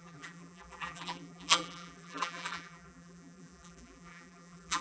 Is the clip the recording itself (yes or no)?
no